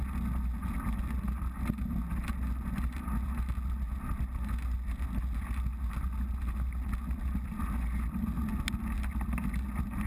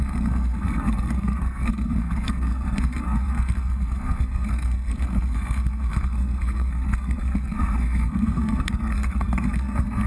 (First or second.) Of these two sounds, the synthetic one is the second